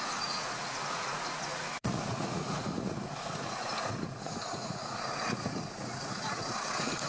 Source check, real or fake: fake